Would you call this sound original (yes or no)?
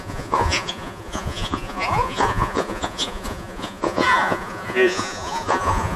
no